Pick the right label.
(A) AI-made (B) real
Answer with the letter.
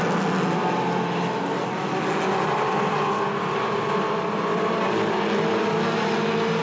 B